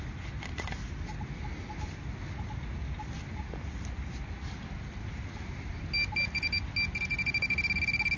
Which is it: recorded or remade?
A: recorded